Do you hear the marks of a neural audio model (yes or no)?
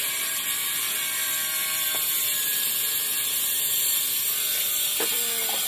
no